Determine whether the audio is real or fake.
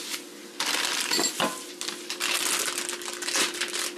real